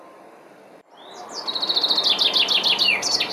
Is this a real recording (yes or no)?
yes